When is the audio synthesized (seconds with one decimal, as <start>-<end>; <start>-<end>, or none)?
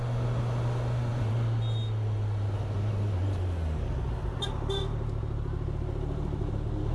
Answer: none